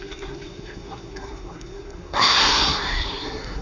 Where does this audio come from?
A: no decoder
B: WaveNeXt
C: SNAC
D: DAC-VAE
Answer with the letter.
C